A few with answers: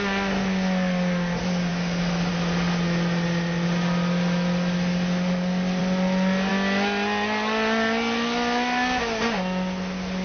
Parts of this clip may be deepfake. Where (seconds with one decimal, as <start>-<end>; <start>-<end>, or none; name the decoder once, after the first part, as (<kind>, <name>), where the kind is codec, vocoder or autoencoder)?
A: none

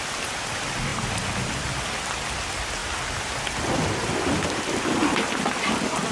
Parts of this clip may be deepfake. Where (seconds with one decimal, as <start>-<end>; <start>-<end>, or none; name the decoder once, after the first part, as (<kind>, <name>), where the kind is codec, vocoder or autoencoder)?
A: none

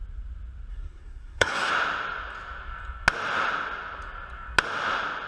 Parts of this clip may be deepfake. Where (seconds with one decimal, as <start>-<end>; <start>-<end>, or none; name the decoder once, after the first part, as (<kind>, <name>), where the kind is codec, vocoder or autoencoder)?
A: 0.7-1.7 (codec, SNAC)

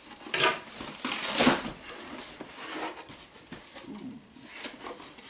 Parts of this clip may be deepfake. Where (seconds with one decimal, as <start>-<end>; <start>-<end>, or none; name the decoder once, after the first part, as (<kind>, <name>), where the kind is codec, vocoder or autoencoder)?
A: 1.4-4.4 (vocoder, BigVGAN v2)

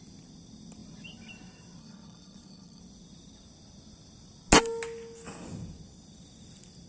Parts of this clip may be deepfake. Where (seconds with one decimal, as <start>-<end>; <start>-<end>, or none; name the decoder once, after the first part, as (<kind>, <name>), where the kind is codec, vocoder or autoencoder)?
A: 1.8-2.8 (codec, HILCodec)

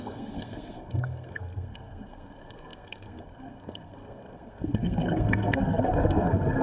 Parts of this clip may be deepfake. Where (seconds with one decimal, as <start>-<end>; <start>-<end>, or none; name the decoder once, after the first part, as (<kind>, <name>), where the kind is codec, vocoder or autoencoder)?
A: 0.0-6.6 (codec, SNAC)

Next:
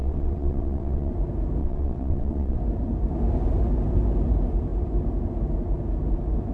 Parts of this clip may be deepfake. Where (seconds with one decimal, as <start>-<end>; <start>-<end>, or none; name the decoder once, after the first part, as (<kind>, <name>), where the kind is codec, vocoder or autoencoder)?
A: 0.0-1.1 (vocoder, WaveNeXt); 1.6-2.6